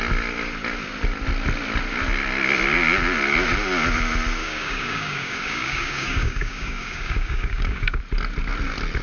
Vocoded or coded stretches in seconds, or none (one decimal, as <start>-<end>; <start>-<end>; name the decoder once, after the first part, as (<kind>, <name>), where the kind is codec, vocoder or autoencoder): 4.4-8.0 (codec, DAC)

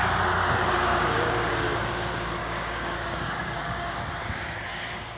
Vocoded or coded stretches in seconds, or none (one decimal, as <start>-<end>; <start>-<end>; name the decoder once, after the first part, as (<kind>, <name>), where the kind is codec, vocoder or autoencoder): 0.9-1.5 (codec, DAC); 2.4-4.0; 4.7-5.2

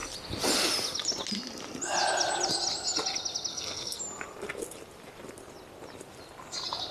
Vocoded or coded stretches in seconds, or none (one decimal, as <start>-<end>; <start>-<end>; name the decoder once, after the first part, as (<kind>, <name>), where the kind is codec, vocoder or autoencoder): 3.5-4.0 (codec, SNAC)